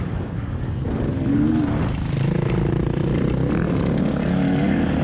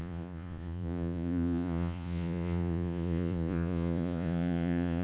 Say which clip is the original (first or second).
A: first